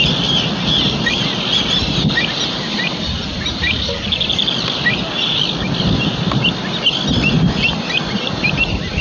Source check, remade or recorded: recorded